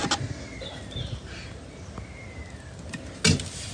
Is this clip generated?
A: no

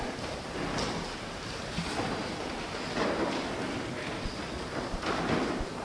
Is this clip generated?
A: no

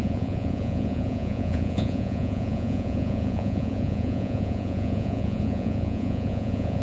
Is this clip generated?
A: yes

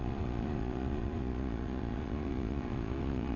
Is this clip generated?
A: yes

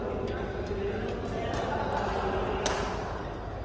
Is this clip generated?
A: no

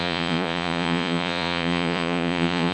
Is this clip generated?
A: yes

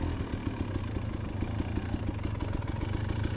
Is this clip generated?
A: no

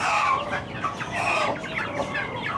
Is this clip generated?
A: no